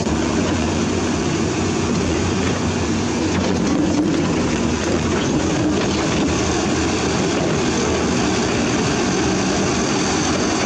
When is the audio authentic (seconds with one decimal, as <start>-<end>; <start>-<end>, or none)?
5.5-10.1